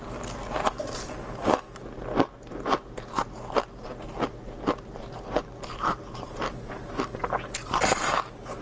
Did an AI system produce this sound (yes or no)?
no